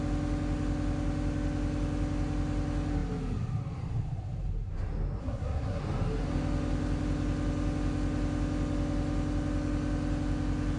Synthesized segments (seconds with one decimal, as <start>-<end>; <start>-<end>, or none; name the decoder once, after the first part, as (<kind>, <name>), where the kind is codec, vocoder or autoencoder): 5.2-5.8 (codec, SNAC)